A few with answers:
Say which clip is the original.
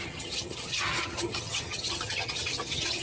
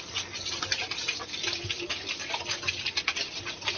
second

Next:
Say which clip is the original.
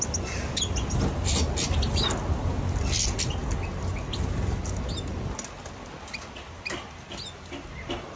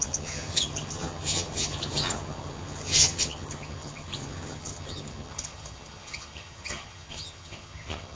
first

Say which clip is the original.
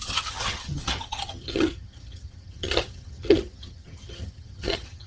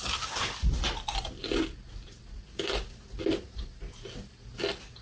second